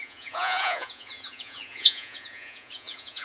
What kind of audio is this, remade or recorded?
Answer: remade